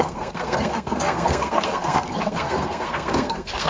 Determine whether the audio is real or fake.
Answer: fake